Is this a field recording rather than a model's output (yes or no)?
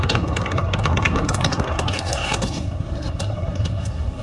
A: no